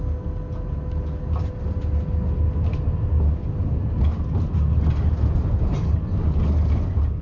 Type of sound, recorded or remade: recorded